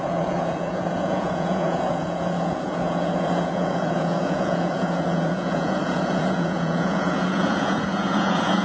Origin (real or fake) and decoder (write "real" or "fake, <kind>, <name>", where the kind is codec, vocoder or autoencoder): fake, vocoder, Vocos